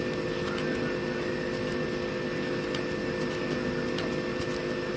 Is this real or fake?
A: real